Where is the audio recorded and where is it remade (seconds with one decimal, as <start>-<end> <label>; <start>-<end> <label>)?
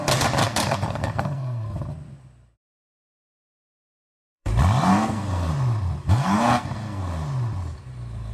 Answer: 0.0-0.4 recorded; 0.4-1.8 remade; 1.8-2.8 recorded; 2.8-4.5 remade; 4.5-4.9 recorded; 4.9-5.5 remade; 5.5-6.0 recorded; 6.0-7.0 remade; 7.0-8.3 recorded